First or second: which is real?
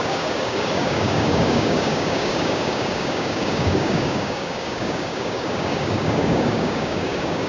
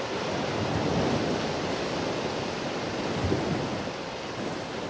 second